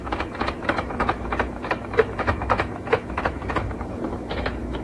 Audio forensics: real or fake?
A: fake